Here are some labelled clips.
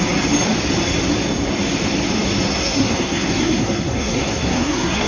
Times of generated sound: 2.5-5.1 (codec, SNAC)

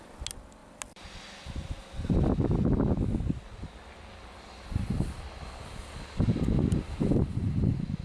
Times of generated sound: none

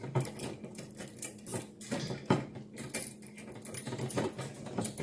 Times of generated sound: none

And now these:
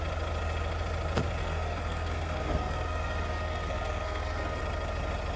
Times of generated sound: 1.4-4.6 (codec, SNAC)

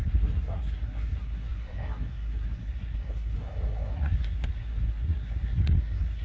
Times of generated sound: 0.0-6.2 (codec, SNAC)

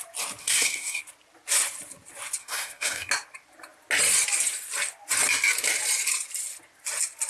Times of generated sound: 0.4-1.0 (codec, SNAC); 2.4-3.1